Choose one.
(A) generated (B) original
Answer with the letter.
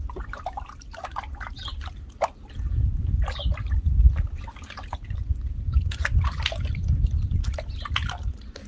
B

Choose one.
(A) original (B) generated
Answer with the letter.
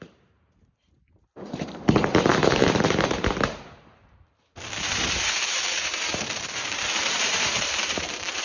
B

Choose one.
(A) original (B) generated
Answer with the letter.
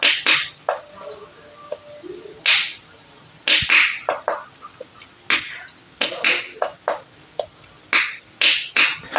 A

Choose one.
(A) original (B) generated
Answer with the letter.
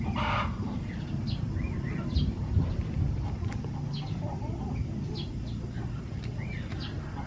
B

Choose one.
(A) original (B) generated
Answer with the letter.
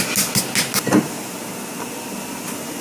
A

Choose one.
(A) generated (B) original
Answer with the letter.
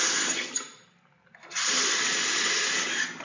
B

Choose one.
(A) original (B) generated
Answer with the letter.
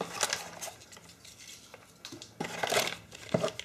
A